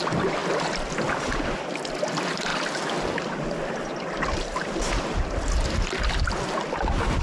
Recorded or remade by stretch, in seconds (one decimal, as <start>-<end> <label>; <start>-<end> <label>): 0.0-7.2 recorded